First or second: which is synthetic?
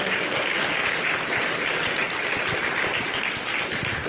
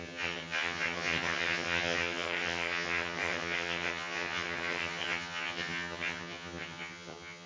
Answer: second